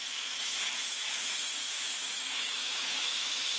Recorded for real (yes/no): no